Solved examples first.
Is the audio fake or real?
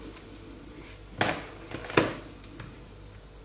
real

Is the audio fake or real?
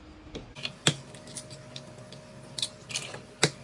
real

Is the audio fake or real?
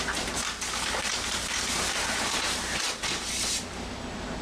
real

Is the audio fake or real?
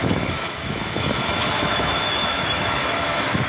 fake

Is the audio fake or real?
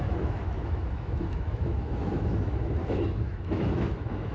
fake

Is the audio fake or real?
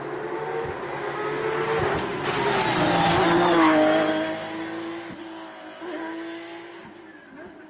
real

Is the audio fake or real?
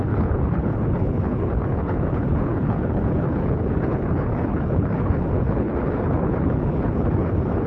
fake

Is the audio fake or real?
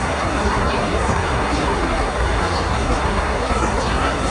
fake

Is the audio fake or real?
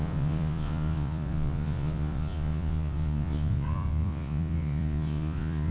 fake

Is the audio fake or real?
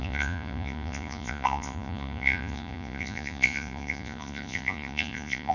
fake